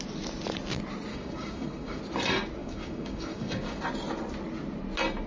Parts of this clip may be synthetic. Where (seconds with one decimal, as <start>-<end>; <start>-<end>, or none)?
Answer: 1.1-2.0; 2.6-3.8